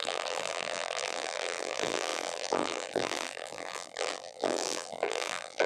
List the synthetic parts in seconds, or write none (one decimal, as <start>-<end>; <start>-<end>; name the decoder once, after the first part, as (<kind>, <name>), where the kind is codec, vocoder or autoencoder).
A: 0.0-5.7 (vocoder, BigVGAN v2)

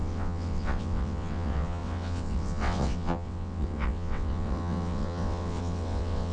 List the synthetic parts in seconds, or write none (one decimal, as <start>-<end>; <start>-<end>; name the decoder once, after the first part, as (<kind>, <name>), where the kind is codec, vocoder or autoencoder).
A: 0.0-6.3 (vocoder, WaveNeXt)

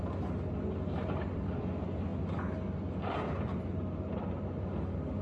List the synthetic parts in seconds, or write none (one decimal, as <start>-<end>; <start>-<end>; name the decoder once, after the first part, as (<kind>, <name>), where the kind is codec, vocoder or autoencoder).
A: none

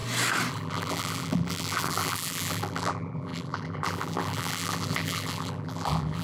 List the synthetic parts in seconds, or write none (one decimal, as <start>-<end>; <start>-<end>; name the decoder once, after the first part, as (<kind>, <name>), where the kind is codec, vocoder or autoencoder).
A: 0.5-6.2 (vocoder, BigVGAN v2)

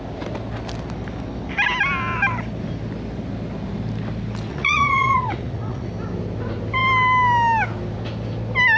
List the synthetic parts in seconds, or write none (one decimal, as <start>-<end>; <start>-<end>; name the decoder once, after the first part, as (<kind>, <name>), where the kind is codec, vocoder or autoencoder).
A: 4.5-5.9 (vocoder, Vocos)

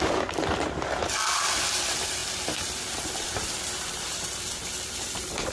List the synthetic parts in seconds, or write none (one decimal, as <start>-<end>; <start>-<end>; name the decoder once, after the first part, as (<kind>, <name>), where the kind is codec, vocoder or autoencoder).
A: 0.0-5.5 (vocoder, BigVGAN v2)